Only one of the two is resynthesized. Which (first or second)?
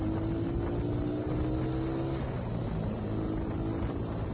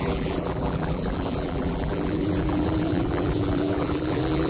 second